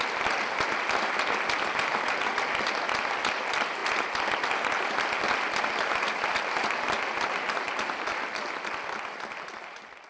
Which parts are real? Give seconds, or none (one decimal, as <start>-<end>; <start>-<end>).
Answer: 0.0-10.1